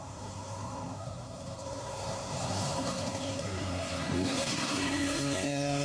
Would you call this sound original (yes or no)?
no